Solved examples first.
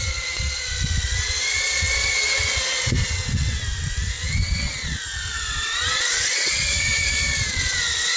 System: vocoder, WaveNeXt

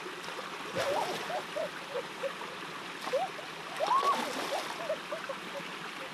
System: none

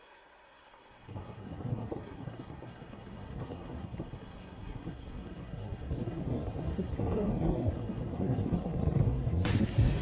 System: codec, SNAC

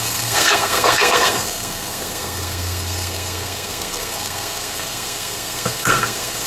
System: codec, SNAC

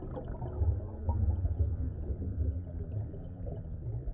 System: none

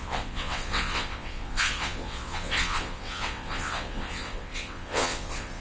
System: vocoder, WaveNeXt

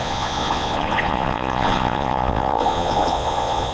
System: vocoder, Vocos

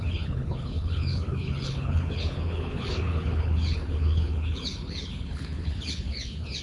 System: codec, HILCodec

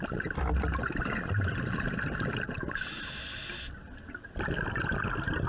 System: none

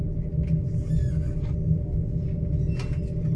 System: none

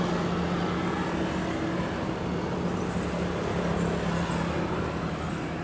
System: none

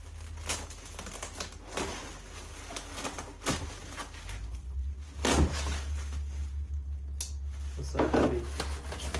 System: none